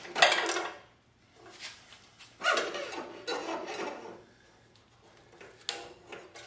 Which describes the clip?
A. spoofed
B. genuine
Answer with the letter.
B